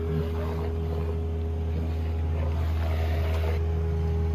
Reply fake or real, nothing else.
real